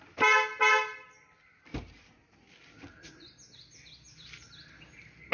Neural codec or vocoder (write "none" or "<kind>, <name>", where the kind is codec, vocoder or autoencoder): none